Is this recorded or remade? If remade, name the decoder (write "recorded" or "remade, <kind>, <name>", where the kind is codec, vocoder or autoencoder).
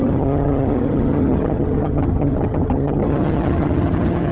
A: remade, vocoder, HiFi-GAN